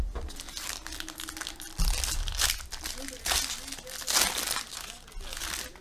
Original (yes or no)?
yes